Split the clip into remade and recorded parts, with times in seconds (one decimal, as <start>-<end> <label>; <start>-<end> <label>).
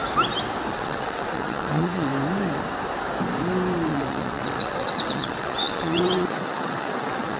0.0-0.7 recorded; 0.7-2.1 remade; 2.1-3.9 recorded; 3.9-7.4 remade